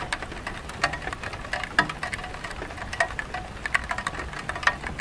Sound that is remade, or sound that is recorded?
recorded